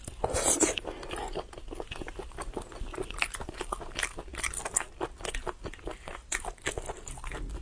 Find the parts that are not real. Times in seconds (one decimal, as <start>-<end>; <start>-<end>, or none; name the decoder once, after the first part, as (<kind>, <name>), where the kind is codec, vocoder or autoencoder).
none